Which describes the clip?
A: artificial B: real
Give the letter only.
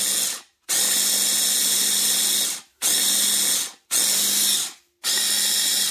B